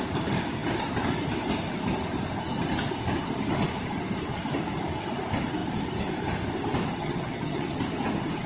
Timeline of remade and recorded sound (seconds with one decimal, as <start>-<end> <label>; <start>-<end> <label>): 0.0-6.9 recorded; 6.9-7.8 remade; 7.8-8.5 recorded